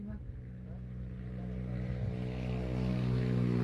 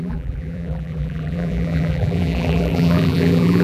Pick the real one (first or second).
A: first